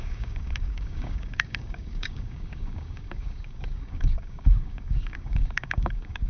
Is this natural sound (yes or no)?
no